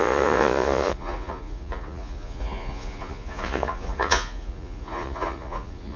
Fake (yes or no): yes